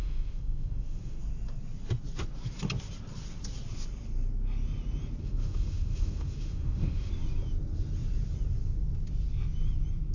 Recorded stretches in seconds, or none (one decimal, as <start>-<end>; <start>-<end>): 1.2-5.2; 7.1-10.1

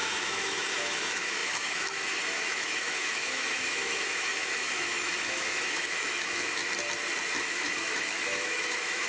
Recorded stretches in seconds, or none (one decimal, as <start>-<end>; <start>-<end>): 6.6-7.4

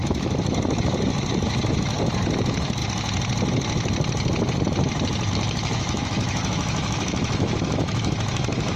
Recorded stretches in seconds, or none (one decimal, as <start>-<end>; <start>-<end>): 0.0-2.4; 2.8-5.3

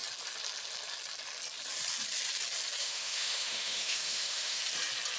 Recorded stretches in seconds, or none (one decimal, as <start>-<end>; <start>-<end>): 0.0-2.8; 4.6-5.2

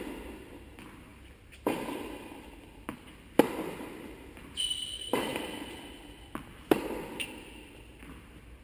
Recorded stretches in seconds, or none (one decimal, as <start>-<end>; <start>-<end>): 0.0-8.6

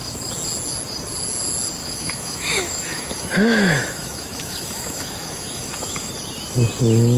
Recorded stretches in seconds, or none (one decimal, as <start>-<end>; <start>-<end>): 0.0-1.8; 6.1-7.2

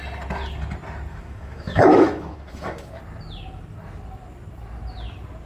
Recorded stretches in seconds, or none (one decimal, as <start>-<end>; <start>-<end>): 0.0-1.1; 3.0-5.5

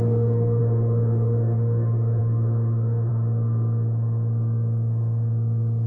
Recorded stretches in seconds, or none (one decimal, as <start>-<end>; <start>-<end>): 3.1-5.9